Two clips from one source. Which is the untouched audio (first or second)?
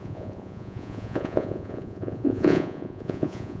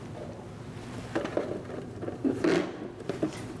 second